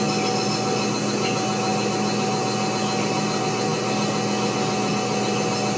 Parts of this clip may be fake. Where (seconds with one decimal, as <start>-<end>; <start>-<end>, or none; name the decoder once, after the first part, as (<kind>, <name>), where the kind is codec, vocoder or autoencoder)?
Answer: none